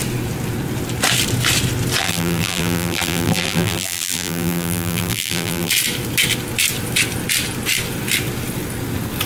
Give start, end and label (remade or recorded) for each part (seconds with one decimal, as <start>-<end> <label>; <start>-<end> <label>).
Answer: 0.0-2.0 recorded; 2.0-5.7 remade; 5.7-9.3 recorded